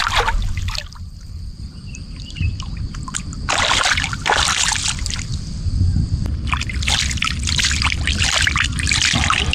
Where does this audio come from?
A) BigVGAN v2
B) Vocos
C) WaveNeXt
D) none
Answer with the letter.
A